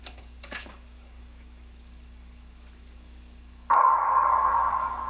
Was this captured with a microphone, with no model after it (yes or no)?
no